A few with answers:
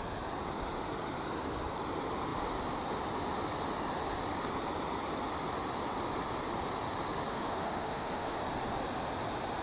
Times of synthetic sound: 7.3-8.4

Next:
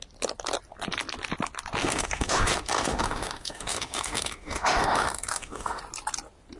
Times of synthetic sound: 1.8-5.8

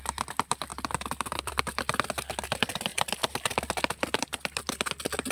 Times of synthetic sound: none